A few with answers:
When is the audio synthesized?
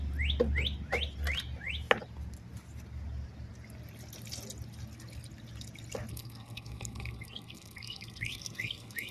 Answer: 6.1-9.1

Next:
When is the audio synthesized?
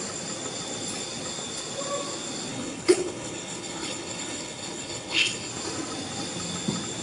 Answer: 2.5-5.5